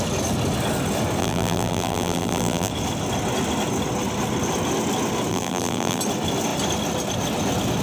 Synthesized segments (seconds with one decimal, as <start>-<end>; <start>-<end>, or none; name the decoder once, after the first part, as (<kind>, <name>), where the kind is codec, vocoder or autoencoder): 1.2-2.7 (vocoder, BigVGAN v2); 5.3-6.0